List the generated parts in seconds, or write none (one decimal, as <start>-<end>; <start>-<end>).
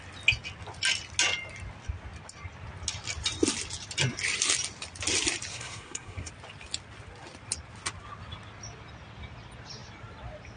5.5-6.3